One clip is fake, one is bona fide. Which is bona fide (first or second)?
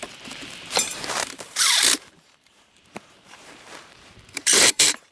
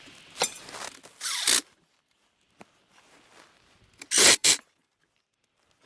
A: second